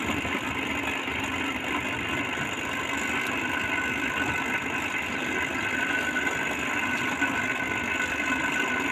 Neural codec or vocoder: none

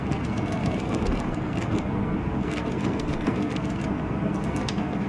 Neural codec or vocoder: codec, SNAC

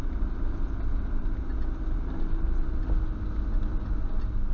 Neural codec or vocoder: none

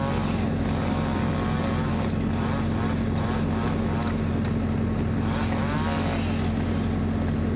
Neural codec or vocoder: none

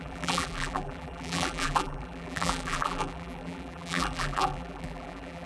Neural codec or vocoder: vocoder, BigVGAN v2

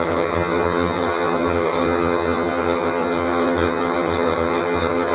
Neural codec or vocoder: vocoder, HiFi-GAN